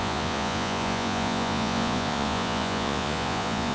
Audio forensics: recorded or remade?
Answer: remade